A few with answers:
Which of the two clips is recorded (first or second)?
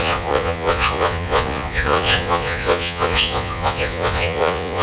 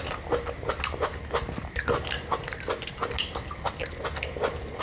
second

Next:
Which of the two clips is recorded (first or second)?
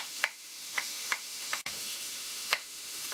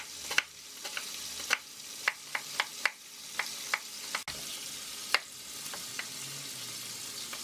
second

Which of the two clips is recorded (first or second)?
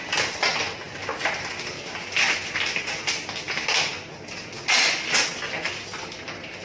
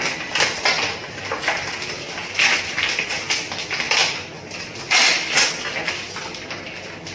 first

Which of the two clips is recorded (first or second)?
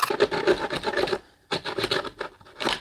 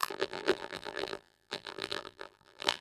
first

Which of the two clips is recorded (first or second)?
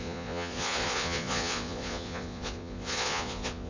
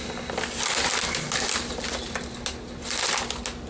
second